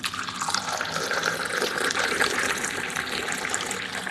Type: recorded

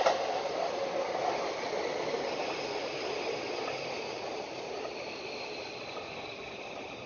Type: remade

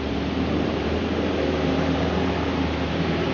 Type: remade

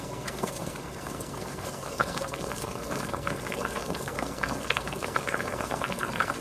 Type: remade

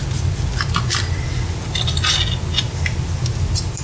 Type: recorded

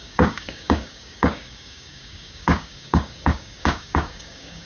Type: remade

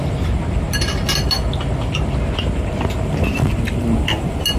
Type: recorded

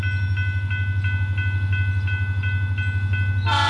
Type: recorded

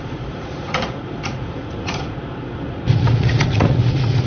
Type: remade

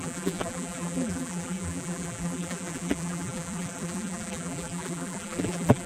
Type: remade